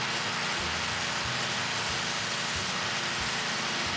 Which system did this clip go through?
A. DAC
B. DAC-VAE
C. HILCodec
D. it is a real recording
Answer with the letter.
D